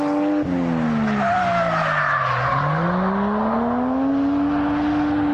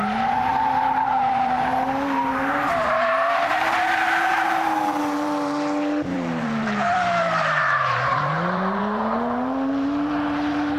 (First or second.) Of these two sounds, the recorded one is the first